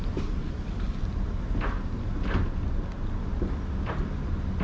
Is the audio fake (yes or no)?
no